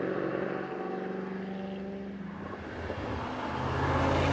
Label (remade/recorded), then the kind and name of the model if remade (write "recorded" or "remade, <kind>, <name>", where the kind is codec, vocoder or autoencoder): recorded